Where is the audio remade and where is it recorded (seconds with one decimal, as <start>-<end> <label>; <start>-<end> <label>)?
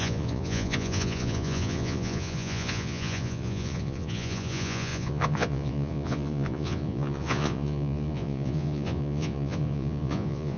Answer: 0.0-10.6 remade